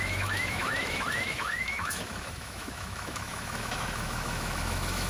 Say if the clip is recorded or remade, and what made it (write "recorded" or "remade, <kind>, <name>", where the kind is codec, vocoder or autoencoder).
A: remade, autoencoder, DAC-VAE